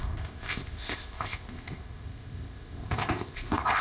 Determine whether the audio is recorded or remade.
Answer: remade